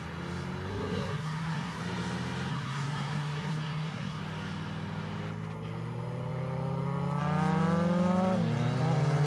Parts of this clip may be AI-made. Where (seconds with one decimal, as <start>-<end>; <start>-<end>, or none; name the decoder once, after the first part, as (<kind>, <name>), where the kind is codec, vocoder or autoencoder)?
0.7-1.8 (codec, SNAC); 2.5-4.2